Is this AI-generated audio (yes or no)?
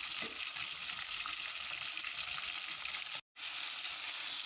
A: no